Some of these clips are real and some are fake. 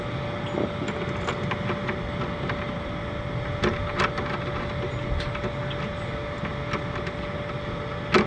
real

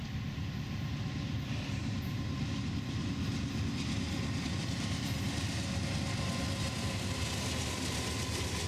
real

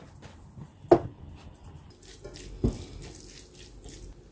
real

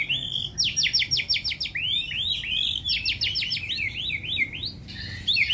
real